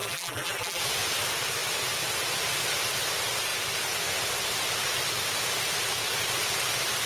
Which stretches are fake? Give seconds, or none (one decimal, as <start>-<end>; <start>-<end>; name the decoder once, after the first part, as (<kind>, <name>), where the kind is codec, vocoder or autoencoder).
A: 0.0-0.8 (vocoder, BigVGAN v2)